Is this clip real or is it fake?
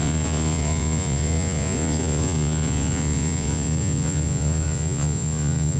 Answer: fake